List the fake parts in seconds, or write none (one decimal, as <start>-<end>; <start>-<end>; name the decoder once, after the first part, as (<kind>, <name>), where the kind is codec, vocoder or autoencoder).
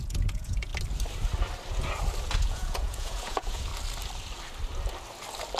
0.0-0.7 (vocoder, Vocos); 2.4-3.7